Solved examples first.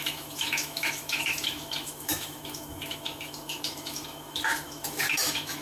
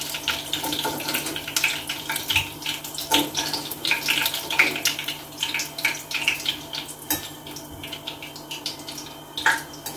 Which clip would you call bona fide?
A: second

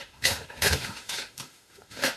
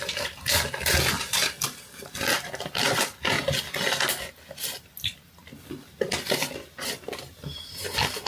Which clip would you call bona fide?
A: second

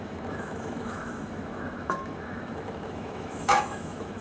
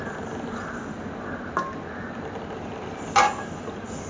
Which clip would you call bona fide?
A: second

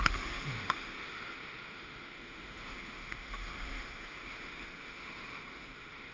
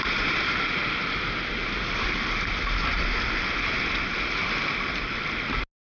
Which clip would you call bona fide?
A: second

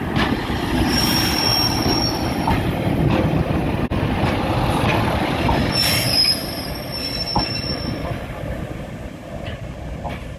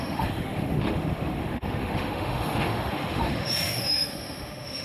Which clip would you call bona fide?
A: first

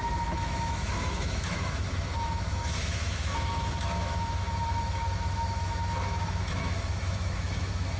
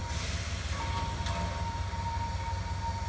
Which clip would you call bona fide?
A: second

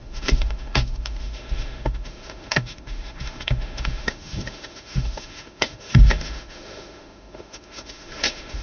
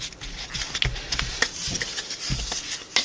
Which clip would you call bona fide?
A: second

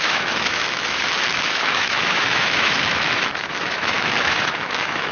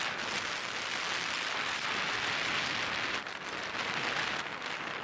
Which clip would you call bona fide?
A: second